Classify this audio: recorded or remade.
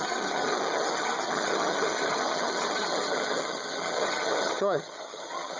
remade